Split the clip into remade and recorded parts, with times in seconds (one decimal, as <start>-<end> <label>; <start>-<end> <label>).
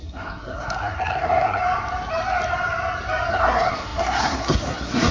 0.0-1.6 remade; 1.6-3.3 recorded; 3.3-5.1 remade